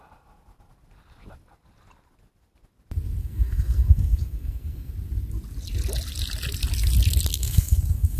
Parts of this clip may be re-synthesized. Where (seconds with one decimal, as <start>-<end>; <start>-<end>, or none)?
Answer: 3.2-4.9; 7.3-8.2